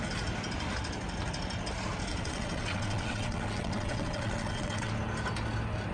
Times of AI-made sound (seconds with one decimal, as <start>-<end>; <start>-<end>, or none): 2.1-4.9